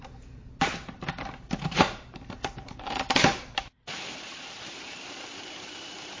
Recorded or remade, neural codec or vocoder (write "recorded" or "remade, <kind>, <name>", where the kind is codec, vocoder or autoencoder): remade, vocoder, BigVGAN v2